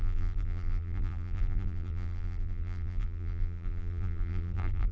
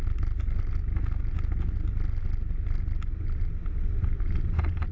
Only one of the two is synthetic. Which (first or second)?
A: first